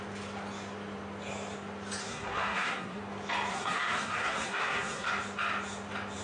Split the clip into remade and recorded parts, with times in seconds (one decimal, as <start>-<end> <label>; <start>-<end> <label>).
0.0-2.0 recorded; 2.0-3.0 remade; 3.0-3.5 recorded; 3.5-5.1 remade; 5.1-6.2 recorded